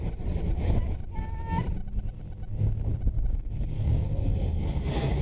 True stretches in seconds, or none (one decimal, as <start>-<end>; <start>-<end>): 0.0-3.3